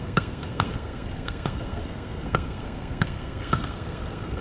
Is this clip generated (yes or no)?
yes